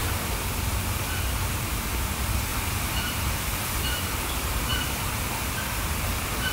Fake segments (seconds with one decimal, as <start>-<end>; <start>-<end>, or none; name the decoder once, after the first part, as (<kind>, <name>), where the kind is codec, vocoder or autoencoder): 2.5-4.0 (vocoder, BigVGAN v2)